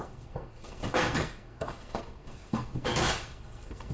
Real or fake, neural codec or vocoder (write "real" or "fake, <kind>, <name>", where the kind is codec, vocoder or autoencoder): fake, codec, SNAC